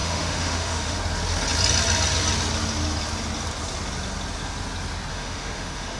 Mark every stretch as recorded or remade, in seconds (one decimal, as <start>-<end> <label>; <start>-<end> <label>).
0.0-1.0 remade; 1.0-5.1 recorded; 5.1-6.0 remade